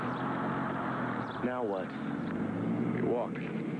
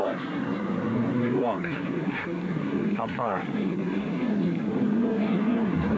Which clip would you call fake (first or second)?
second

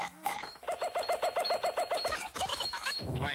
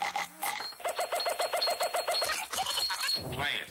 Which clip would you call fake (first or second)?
first